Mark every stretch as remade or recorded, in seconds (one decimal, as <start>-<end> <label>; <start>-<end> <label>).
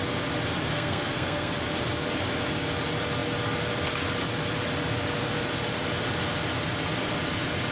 0.0-0.7 recorded; 0.7-1.5 remade; 1.5-7.7 recorded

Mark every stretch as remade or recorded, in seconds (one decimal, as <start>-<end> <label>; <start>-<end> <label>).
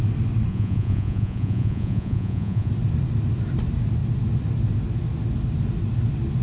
0.0-0.5 recorded; 0.5-2.7 remade; 2.7-6.4 recorded